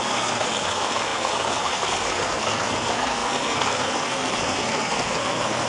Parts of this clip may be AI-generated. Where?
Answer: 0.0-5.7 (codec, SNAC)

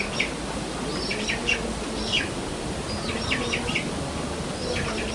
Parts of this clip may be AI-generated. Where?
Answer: none

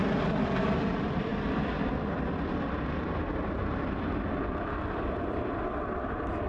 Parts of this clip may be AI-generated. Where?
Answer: none

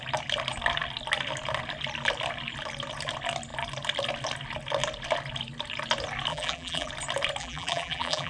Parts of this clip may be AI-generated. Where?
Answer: 6.3-6.9 (vocoder, BigVGAN v2); 7.4-8.3

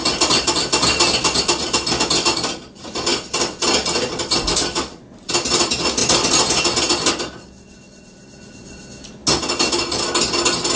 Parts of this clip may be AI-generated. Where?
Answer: none

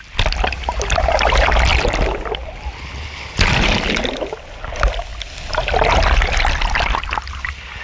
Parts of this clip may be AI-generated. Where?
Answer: none